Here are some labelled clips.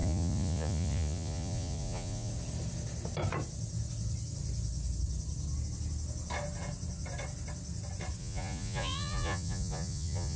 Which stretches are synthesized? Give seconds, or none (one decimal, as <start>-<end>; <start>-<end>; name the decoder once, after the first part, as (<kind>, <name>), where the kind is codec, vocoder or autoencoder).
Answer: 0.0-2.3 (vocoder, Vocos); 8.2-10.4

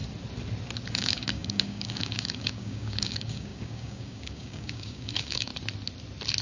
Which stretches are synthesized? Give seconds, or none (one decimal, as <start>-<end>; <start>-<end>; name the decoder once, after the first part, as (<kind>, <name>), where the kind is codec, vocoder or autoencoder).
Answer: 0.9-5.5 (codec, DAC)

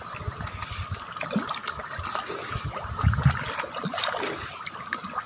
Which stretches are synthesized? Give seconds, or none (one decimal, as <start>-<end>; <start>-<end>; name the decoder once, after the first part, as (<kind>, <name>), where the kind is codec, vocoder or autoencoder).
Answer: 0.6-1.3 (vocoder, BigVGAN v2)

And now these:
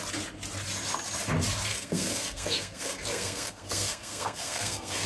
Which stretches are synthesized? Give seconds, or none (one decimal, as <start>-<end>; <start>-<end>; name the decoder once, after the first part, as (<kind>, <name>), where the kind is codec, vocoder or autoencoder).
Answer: 1.7-5.1 (codec, SNAC)

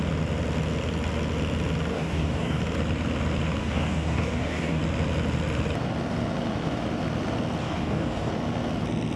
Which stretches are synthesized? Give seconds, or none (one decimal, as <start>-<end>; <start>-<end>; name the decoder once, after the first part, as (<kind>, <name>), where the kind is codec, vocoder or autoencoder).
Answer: 1.9-2.6 (codec, DAC); 3.6-4.8; 7.6-8.3

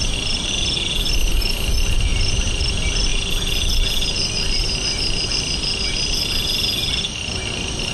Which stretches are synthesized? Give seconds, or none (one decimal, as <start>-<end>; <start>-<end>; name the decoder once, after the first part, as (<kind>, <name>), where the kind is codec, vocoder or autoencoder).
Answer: 2.1-2.6 (vocoder, BigVGAN v2)

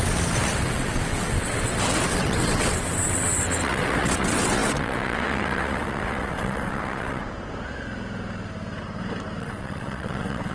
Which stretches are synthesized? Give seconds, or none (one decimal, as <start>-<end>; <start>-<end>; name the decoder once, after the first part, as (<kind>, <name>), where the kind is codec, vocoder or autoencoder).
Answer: 0.0-7.2 (vocoder, WaveNeXt); 9.4-10.5

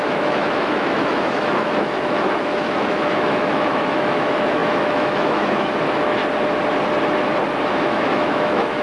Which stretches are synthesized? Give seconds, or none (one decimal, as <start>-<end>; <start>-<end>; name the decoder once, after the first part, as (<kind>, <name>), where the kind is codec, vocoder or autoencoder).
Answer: 0.0-6.2 (autoencoder, DAC-VAE); 7.7-8.8